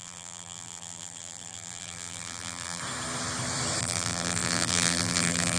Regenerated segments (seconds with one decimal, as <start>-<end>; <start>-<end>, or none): 0.0-2.8; 3.8-5.6